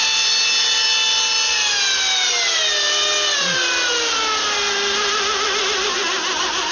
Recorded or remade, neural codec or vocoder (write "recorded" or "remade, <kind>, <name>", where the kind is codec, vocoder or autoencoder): recorded